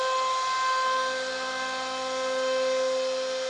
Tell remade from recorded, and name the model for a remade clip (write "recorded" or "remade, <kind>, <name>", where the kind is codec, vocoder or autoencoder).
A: recorded